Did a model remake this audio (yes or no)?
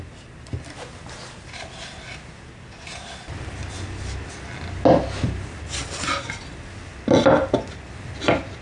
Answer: no